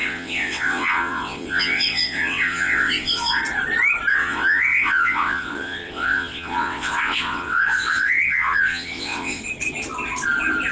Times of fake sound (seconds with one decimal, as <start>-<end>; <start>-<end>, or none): 0.0-3.4; 4.1-9.4